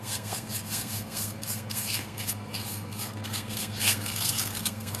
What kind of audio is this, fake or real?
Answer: fake